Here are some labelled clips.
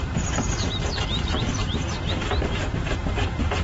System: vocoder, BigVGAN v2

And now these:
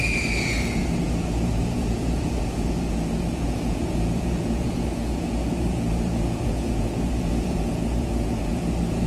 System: vocoder, Vocos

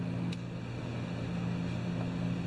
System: none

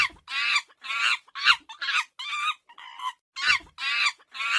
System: none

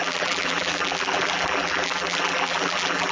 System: vocoder, BigVGAN v2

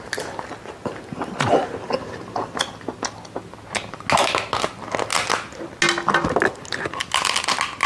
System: none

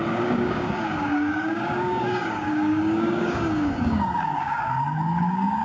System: codec, DAC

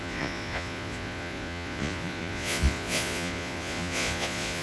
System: vocoder, Vocos